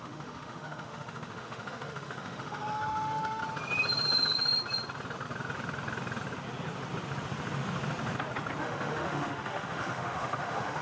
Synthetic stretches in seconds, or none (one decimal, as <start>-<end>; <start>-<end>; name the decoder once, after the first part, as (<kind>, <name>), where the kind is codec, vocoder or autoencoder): 0.0-3.4 (autoencoder, DAC-VAE); 8.6-10.8